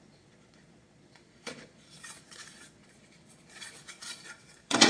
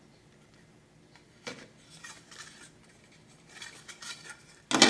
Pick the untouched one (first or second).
second